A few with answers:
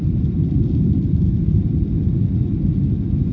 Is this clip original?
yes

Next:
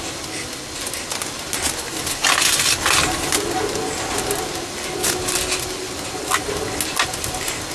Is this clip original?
yes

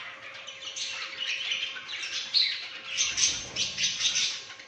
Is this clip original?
yes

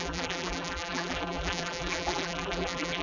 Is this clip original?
no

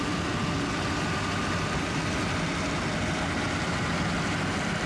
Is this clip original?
yes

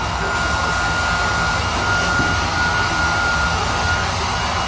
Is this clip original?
yes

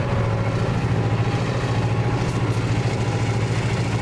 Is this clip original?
yes